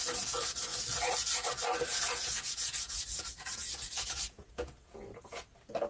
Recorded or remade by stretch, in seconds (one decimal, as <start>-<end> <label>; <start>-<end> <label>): 0.0-1.9 recorded; 1.9-5.4 remade; 5.4-5.9 recorded